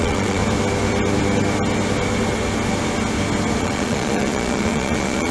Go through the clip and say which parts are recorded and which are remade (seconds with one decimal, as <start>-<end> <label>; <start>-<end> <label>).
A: 0.0-0.4 remade; 0.4-3.6 recorded; 3.6-5.3 remade